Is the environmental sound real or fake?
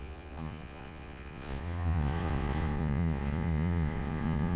fake